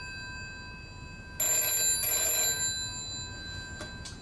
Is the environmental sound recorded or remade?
recorded